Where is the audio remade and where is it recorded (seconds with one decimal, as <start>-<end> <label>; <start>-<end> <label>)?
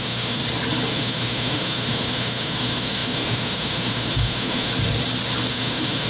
0.0-0.4 remade; 0.4-0.9 recorded; 0.9-4.7 remade; 4.7-5.5 recorded; 5.5-6.1 remade